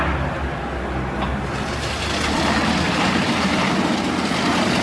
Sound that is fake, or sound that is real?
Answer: real